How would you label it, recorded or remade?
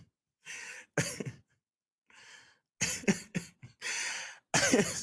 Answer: recorded